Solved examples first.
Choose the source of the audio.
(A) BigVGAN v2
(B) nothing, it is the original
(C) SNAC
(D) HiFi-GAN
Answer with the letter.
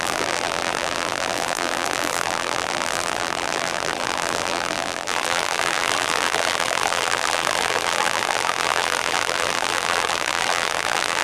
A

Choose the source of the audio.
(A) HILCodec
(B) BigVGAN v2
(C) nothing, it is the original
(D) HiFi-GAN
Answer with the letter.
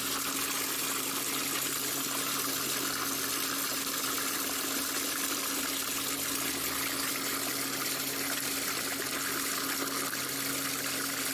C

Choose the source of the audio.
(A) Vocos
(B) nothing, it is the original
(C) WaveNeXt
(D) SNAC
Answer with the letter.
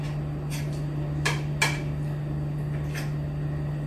B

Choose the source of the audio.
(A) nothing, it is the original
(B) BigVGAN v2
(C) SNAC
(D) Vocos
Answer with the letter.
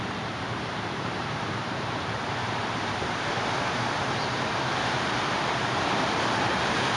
B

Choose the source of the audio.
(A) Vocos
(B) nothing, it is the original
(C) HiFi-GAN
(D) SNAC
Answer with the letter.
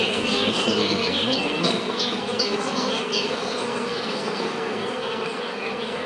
D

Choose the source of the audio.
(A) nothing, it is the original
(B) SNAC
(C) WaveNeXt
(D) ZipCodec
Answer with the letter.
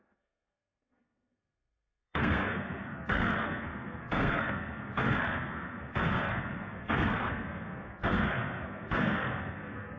B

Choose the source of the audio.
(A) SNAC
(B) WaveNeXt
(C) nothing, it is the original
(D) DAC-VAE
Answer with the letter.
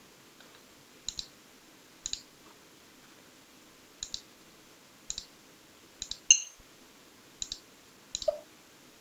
C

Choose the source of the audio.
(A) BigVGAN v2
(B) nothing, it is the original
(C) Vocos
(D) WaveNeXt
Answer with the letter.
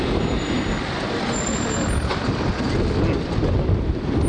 B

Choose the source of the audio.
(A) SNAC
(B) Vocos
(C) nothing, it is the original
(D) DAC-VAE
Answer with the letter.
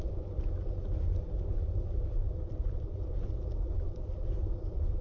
C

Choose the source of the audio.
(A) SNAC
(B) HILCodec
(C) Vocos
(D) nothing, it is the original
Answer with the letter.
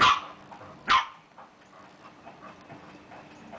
D